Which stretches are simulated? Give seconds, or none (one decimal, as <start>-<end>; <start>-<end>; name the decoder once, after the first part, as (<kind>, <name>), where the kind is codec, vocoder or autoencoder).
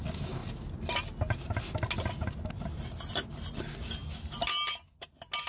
none